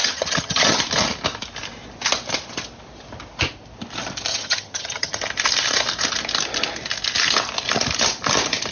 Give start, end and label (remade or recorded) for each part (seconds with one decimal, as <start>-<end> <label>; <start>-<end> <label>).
0.0-0.8 remade; 0.8-4.3 recorded; 4.3-5.2 remade; 5.2-8.7 recorded